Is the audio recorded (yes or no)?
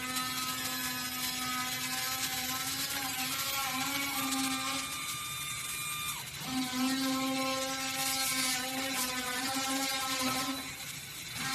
yes